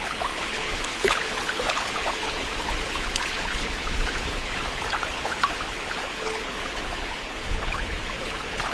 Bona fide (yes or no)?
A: no